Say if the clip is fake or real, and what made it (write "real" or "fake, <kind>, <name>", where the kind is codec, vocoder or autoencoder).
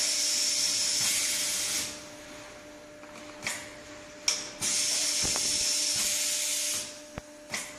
real